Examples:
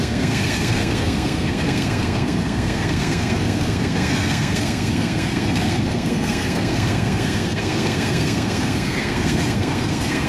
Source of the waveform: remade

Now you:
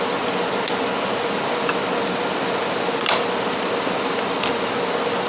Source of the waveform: recorded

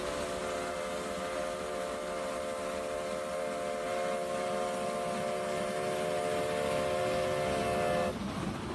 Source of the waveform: recorded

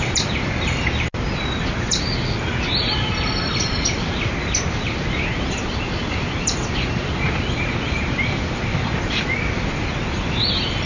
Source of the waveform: recorded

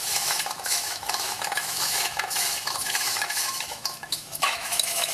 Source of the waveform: remade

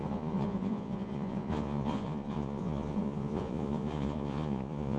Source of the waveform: remade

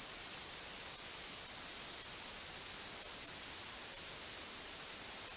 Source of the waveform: recorded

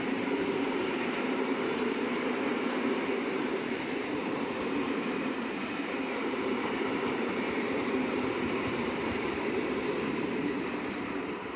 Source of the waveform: remade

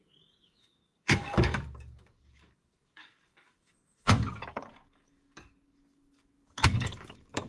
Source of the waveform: remade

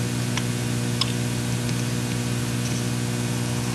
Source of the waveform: recorded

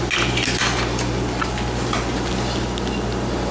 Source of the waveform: recorded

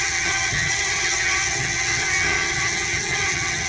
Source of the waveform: remade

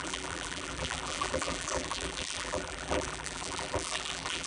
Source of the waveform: remade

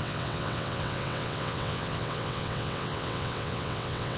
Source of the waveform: remade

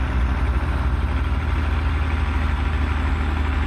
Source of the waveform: recorded